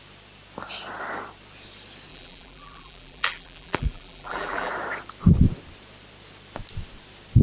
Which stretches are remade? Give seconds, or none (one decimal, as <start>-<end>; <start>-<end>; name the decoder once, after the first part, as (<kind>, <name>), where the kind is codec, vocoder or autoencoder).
2.1-4.7 (vocoder, BigVGAN v2)

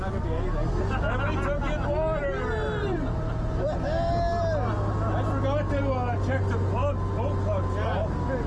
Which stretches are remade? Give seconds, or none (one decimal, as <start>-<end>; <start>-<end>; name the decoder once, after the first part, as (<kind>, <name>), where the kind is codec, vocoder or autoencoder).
2.8-3.8 (vocoder, BigVGAN v2)